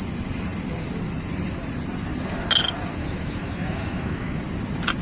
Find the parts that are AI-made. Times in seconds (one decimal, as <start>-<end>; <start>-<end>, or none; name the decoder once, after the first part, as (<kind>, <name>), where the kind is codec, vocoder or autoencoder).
3.0-4.4 (autoencoder, DAC-VAE)